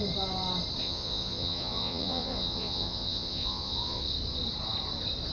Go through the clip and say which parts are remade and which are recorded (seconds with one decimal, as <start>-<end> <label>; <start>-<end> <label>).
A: 0.0-0.8 recorded; 0.8-4.0 remade; 4.0-5.3 recorded